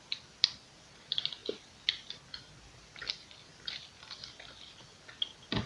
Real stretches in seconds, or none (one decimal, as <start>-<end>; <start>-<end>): 0.0-5.7